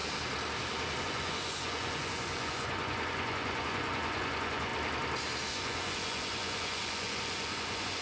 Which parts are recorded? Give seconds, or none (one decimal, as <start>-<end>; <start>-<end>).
0.0-1.0; 4.7-5.5

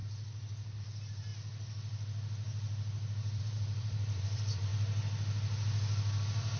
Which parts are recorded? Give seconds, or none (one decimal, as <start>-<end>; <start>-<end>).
0.0-0.8; 1.3-3.4; 4.7-6.6

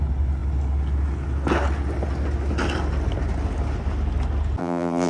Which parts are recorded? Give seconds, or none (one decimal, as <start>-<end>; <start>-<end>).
0.0-4.6

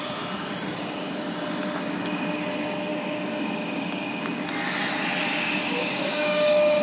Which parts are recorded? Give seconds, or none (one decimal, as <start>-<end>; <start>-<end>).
0.0-2.9; 4.4-5.2

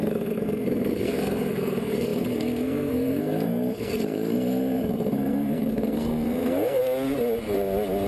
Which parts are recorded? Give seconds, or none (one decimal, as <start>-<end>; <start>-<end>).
6.8-8.1

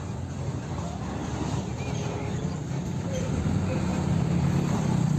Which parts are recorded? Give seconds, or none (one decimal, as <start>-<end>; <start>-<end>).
0.0-1.2; 3.5-3.9

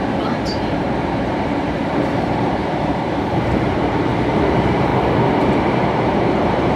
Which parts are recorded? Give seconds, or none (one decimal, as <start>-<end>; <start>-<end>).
4.9-5.4